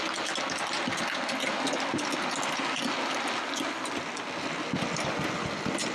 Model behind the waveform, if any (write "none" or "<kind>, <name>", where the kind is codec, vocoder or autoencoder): none